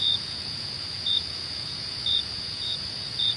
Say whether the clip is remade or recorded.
remade